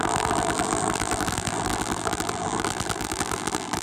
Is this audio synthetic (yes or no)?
yes